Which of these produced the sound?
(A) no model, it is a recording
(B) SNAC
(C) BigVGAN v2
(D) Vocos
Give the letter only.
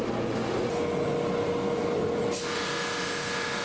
A